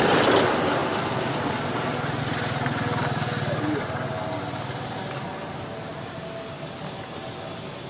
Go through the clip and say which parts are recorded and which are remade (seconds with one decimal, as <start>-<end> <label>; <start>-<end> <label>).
0.0-7.9 recorded